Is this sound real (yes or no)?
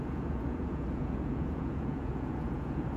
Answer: no